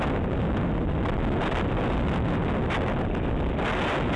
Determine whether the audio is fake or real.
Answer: real